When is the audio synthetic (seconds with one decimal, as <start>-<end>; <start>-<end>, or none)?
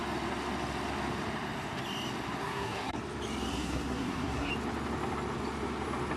2.4-3.0; 3.5-4.5